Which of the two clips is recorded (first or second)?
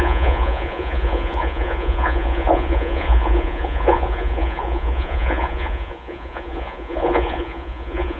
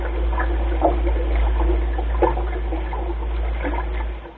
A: second